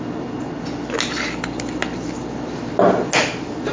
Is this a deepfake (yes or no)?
no